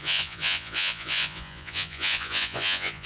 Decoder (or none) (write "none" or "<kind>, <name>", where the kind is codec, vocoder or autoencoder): vocoder, Vocos